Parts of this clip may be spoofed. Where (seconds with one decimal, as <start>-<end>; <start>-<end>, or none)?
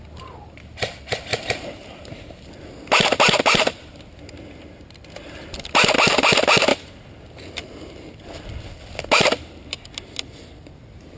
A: 1.3-2.5